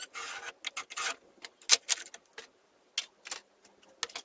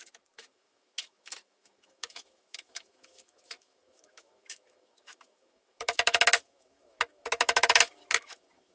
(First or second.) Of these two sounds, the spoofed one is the second